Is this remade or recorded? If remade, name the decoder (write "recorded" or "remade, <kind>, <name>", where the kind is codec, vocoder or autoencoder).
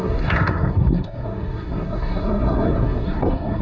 remade, codec, SNAC